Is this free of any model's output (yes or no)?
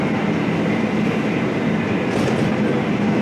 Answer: yes